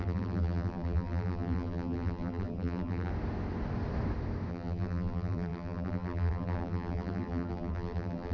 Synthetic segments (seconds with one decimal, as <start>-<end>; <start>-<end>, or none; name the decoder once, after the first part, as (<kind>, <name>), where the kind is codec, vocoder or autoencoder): 0.0-3.1 (vocoder, BigVGAN v2); 4.5-8.3